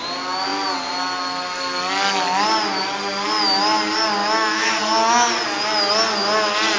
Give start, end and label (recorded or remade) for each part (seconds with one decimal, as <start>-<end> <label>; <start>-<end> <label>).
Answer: 0.0-4.2 recorded; 4.2-4.8 remade; 4.8-6.8 recorded